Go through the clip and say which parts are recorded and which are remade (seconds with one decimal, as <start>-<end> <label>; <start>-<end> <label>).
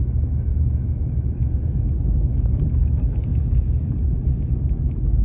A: 0.0-5.2 remade